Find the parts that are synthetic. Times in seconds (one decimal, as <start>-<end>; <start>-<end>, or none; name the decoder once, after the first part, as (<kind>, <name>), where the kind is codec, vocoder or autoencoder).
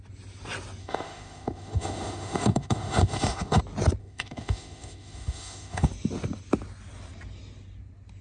0.8-3.6 (autoencoder, DAC-VAE); 4.0-5.9